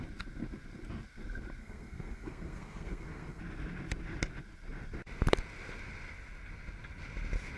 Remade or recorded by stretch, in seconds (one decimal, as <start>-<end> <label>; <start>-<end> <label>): 0.0-1.6 recorded; 1.6-3.4 remade; 3.4-7.6 recorded